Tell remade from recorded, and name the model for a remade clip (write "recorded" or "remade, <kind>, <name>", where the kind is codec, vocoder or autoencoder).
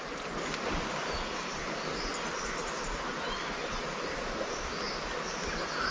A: recorded